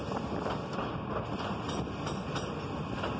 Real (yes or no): yes